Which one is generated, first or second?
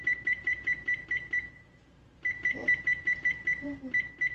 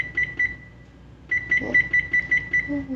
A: first